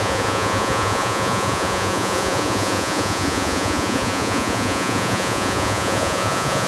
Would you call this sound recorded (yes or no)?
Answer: no